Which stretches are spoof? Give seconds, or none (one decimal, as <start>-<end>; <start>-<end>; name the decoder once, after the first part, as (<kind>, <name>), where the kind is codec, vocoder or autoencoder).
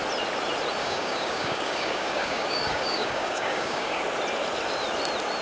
0.8-4.0 (codec, DAC)